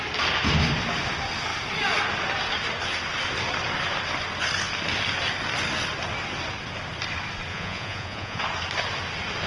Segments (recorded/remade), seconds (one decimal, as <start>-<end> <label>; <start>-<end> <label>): 0.0-7.5 recorded; 7.5-8.4 remade; 8.4-9.5 recorded